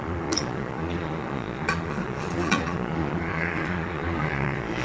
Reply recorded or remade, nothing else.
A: remade